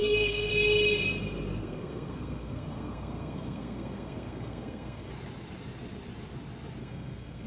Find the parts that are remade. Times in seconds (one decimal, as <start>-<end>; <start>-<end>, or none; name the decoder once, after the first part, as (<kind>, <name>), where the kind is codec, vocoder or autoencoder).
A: 0.0-0.5 (codec, SNAC); 1.6-5.1; 6.8-7.5